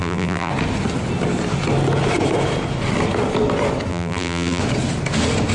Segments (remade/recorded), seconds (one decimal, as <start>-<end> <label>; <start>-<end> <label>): 0.0-0.5 remade; 0.5-3.9 recorded; 3.9-4.6 remade; 4.6-5.5 recorded